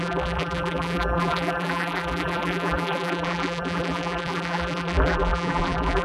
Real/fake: fake